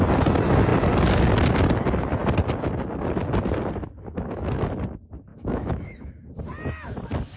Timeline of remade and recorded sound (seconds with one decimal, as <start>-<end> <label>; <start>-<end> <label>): 0.0-5.3 recorded; 5.3-6.3 remade; 6.3-7.4 recorded